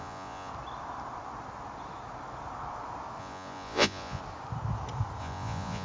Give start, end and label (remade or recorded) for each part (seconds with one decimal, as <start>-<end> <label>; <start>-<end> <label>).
0.0-0.5 remade; 0.5-3.2 recorded; 3.2-4.2 remade; 4.2-5.2 recorded; 5.2-5.8 remade